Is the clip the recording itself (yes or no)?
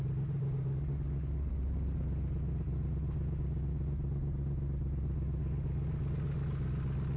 yes